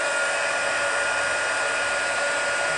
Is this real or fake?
real